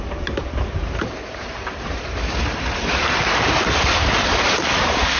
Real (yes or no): no